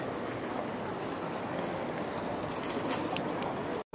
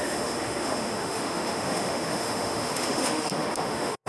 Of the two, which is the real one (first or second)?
first